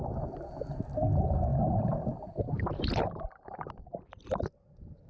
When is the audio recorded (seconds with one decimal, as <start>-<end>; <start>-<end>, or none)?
0.0-1.5; 3.9-5.1